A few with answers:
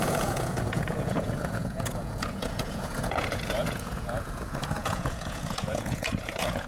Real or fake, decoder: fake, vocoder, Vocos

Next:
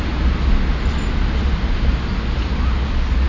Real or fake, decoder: real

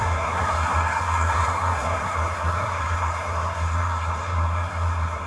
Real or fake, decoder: fake, codec, SNAC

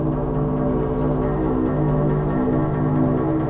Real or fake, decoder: real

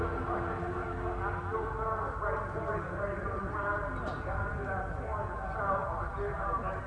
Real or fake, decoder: real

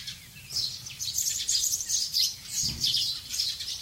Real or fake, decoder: fake, vocoder, BigVGAN v2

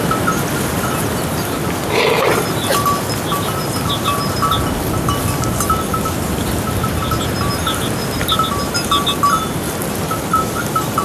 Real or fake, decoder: real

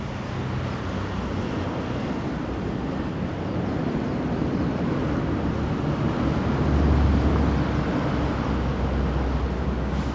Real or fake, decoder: real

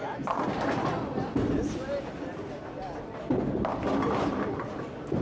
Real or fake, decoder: real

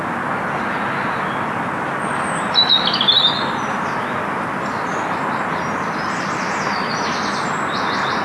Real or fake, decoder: real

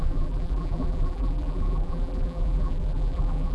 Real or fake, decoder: fake, vocoder, BigVGAN v2